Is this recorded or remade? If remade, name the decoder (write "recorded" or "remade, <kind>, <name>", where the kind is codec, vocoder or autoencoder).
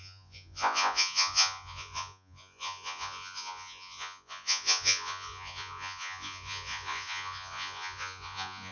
remade, vocoder, Vocos